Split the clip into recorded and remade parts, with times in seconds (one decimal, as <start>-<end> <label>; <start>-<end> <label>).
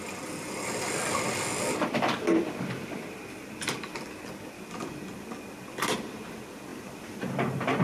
0.0-7.8 recorded